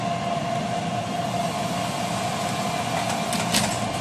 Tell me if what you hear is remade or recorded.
recorded